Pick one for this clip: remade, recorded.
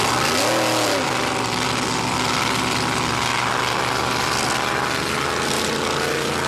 recorded